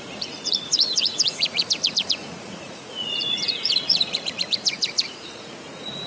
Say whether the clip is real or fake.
fake